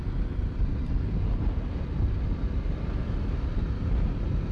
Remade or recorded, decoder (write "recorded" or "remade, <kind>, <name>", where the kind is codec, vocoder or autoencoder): recorded